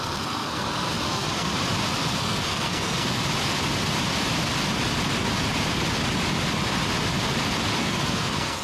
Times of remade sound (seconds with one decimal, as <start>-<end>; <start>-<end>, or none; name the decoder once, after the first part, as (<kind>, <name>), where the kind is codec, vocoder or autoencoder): 0.0-1.5 (codec, SNAC); 2.1-3.2; 7.8-8.6